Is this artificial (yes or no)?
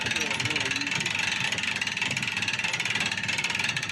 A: no